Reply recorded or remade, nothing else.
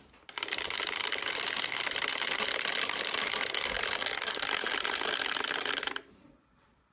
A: remade